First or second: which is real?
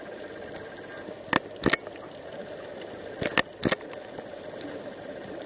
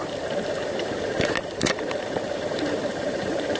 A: first